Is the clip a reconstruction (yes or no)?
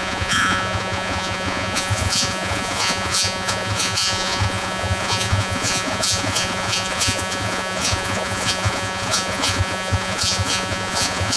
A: yes